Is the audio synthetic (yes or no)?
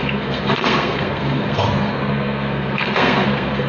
yes